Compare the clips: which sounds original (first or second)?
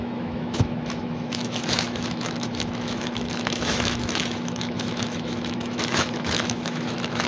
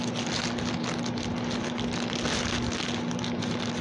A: second